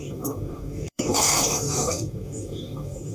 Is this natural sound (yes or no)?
no